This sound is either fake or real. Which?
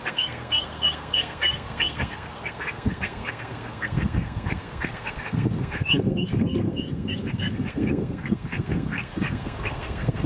fake